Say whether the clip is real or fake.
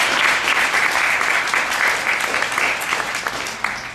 real